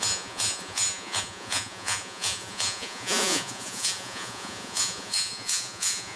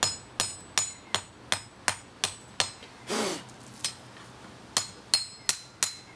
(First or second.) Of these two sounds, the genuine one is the second